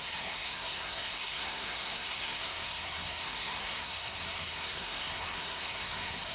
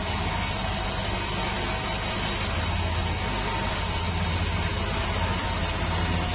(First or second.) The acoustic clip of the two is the second